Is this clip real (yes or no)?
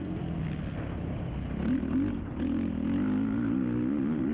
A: yes